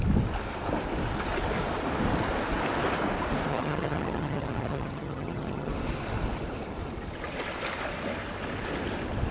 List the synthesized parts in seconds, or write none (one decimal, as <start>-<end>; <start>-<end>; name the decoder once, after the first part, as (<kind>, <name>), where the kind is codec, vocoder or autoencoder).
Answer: 3.5-5.7 (vocoder, HiFi-GAN)